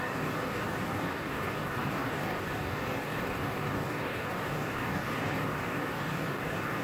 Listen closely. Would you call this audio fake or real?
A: fake